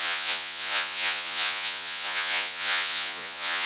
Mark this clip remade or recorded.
remade